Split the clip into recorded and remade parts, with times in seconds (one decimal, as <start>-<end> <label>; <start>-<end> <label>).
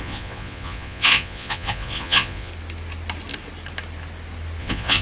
0.0-2.5 remade; 2.5-4.6 recorded; 4.6-5.0 remade